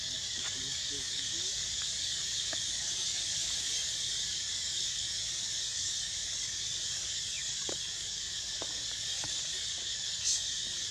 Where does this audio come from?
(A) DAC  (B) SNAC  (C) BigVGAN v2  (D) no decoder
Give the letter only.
A